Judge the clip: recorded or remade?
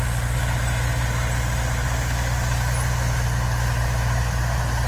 recorded